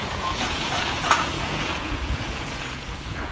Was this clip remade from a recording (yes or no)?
yes